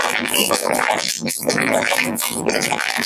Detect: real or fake fake